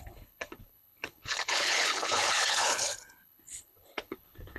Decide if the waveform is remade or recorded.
remade